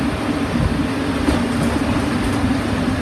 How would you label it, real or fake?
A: real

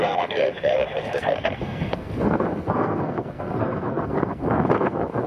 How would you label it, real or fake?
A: fake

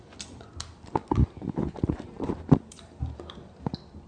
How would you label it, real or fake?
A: real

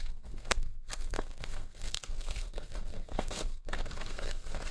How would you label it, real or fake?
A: fake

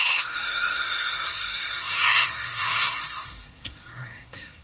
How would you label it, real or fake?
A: fake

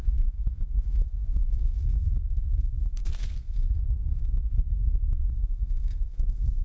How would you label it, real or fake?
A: fake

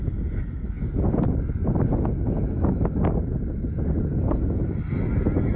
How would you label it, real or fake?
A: real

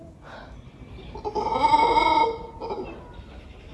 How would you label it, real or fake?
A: real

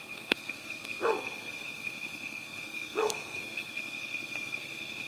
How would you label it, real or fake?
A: fake